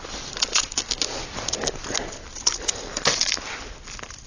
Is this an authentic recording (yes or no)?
yes